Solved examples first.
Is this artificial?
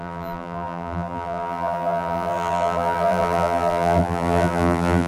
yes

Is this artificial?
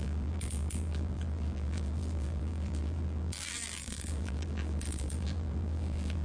yes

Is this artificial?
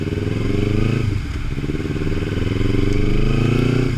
no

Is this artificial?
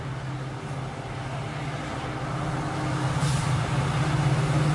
no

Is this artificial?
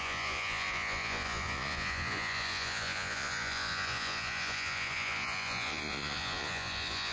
yes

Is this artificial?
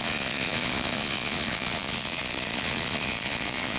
yes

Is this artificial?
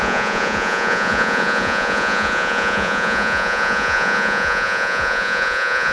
yes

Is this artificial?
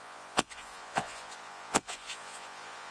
yes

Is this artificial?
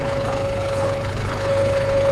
yes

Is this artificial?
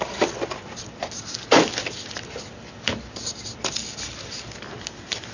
no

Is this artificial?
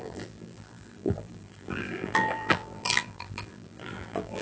yes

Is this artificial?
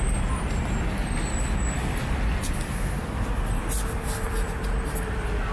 no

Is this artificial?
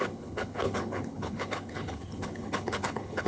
yes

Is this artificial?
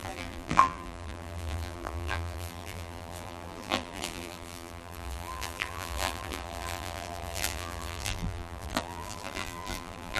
yes